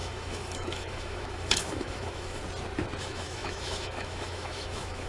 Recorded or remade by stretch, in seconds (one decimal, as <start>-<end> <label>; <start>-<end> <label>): 0.0-2.4 remade; 2.4-3.0 recorded; 3.0-5.1 remade